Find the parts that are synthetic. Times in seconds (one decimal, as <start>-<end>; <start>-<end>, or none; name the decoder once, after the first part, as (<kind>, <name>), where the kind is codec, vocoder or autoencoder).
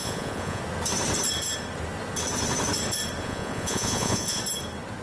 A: 0.0-0.6 (vocoder, Vocos); 3.2-4.4